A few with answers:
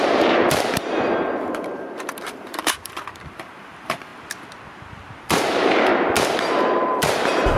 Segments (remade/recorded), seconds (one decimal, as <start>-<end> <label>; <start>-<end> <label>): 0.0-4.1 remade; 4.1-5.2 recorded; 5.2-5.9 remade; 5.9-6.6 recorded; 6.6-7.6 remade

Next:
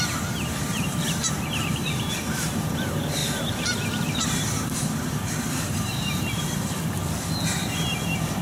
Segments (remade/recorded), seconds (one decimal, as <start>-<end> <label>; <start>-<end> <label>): 0.0-8.4 remade

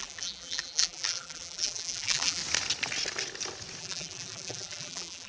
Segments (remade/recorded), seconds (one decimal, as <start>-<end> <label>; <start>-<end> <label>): 0.0-2.4 remade; 2.4-3.8 recorded; 3.8-5.3 remade